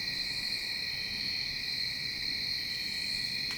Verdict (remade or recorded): recorded